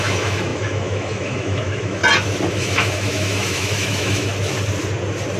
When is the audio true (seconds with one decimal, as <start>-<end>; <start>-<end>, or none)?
2.0-2.5; 4.3-5.4